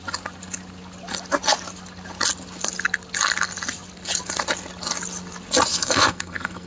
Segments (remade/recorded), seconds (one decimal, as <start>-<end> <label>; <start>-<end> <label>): 0.0-5.7 recorded; 5.7-6.7 remade